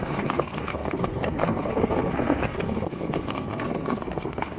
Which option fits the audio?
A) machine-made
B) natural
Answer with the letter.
A